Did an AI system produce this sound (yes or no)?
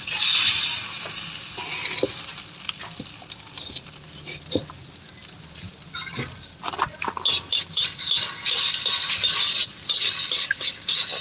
no